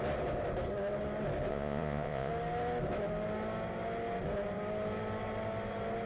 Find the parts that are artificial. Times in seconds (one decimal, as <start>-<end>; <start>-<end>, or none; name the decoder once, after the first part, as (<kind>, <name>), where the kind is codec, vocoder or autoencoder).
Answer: 1.5-2.3 (vocoder, Vocos)